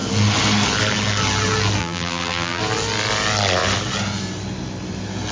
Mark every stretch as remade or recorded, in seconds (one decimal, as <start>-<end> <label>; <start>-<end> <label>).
0.0-1.8 recorded; 1.8-2.6 remade; 2.6-5.3 recorded